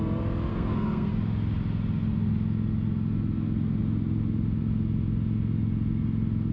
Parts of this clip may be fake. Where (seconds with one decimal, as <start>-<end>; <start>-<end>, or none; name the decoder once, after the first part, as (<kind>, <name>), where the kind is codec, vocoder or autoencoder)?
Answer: 0.5-1.1 (codec, SNAC)